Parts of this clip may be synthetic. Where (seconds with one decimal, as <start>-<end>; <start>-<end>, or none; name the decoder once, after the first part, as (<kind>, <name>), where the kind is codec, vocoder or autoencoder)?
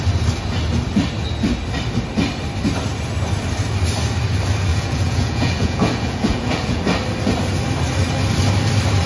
4.7-6.8 (vocoder, Vocos)